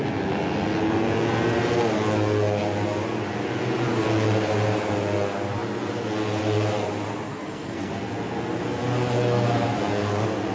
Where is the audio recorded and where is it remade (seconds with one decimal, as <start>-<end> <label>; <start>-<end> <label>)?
0.0-7.3 recorded; 7.3-7.9 remade; 7.9-10.5 recorded